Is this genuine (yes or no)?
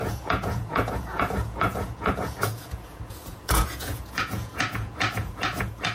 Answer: no